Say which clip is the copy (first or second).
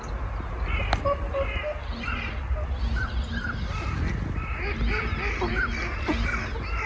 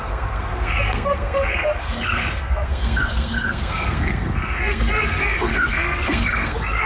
second